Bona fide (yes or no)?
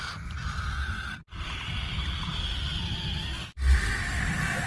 yes